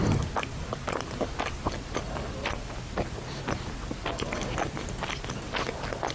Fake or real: real